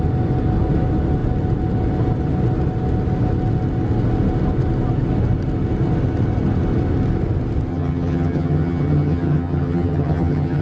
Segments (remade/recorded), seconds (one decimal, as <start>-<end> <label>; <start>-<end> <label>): 0.0-7.7 recorded; 7.7-10.6 remade